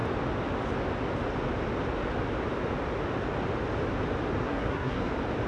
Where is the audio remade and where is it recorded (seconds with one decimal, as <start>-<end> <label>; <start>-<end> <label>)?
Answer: 0.0-4.4 recorded; 4.4-5.1 remade; 5.1-5.5 recorded

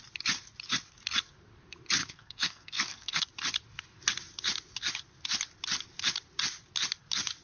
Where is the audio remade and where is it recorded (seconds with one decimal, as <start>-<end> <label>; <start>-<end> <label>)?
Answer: 0.0-2.0 recorded; 2.0-3.2 remade; 3.2-7.4 recorded